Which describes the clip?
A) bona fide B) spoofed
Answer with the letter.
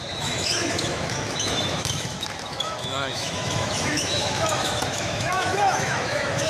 B